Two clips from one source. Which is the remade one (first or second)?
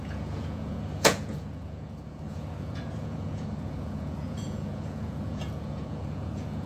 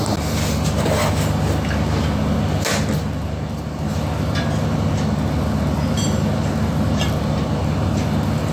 first